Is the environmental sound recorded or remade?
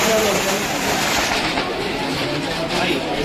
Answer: remade